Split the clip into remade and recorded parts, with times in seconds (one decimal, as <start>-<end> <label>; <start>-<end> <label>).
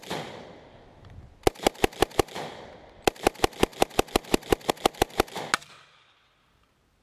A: 0.0-7.0 recorded